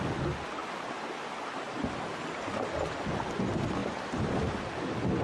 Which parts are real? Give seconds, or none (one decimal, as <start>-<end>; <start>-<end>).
0.0-3.8; 4.8-5.2